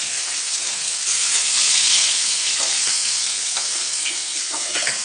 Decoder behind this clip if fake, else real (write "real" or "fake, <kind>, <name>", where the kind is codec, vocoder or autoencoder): fake, codec, SNAC